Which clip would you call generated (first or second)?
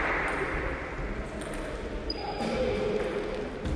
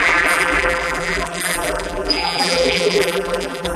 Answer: second